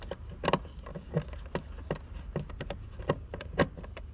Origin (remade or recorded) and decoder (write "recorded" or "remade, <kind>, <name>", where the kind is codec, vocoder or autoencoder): recorded